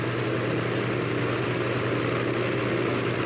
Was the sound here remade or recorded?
recorded